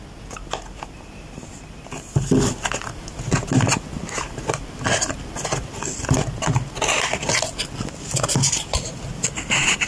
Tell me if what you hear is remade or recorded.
recorded